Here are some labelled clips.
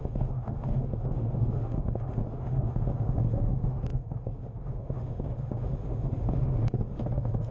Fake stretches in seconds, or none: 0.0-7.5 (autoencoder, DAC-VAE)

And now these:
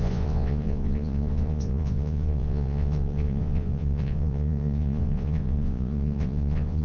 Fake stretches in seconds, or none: 0.0-6.8 (vocoder, Vocos)

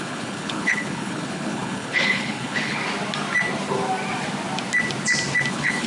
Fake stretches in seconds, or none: 0.0-2.8 (codec, HILCodec); 5.5-5.9